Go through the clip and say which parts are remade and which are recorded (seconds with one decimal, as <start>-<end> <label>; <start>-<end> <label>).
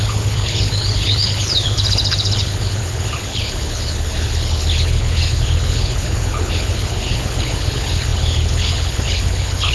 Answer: 0.0-9.7 remade